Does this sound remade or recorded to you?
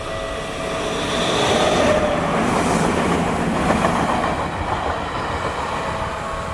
recorded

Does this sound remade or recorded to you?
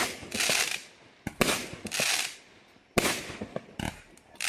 recorded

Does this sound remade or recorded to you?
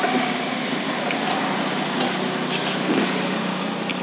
recorded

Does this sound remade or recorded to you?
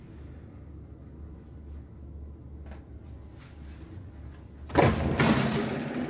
recorded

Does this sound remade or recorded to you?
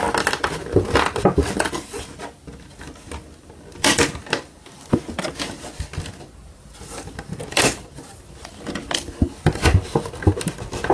recorded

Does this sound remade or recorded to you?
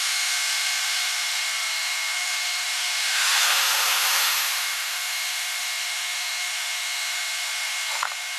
remade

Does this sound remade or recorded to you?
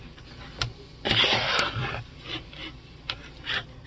remade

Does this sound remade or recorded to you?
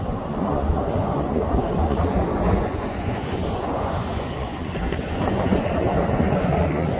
remade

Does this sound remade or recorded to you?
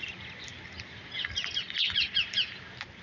recorded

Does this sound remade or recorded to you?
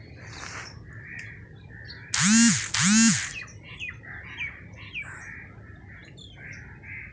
recorded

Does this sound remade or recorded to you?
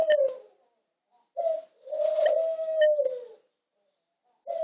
recorded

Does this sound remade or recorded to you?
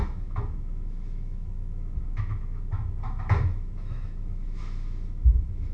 remade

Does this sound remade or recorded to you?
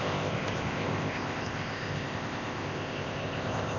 remade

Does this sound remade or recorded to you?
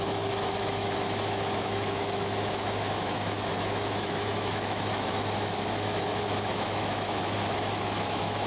remade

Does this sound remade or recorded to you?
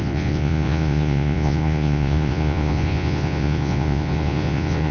remade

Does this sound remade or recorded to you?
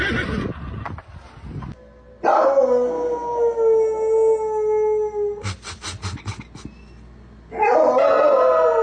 recorded